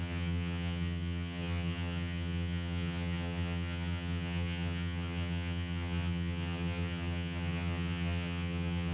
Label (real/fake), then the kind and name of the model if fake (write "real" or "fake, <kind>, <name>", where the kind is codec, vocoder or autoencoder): fake, vocoder, HiFi-GAN